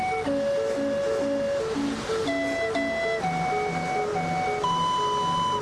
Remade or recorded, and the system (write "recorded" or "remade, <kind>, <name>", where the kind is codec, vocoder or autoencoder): recorded